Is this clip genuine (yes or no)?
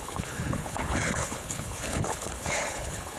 no